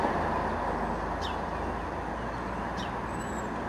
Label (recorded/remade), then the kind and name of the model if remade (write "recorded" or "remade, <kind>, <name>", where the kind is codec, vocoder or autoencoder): recorded